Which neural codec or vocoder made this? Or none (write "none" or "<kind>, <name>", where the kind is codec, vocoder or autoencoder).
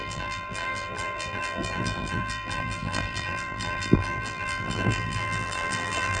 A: vocoder, BigVGAN v2